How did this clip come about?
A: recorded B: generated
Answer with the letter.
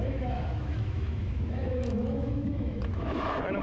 B